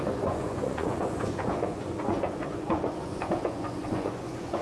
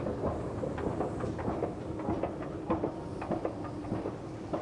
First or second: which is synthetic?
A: first